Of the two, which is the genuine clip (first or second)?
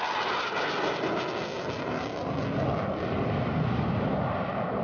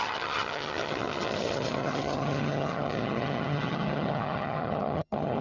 first